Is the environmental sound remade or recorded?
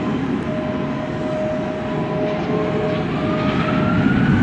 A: recorded